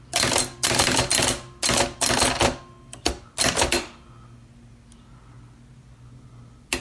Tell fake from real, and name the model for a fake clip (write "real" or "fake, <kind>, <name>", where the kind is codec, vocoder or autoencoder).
real